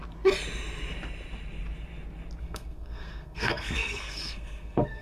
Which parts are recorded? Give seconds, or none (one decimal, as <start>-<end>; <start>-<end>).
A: 0.0-2.4